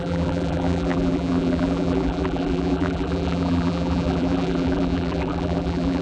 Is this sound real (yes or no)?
no